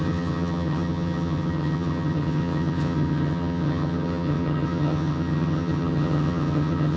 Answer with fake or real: fake